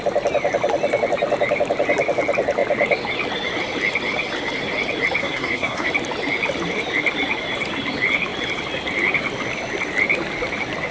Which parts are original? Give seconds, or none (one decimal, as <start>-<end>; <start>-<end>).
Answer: 0.0-5.2; 5.9-10.9